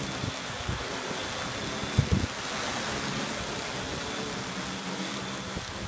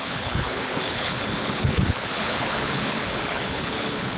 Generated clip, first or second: second